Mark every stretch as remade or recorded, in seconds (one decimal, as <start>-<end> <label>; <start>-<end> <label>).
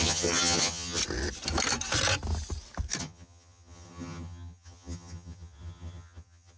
0.0-1.0 remade; 1.0-3.0 recorded; 3.0-6.6 remade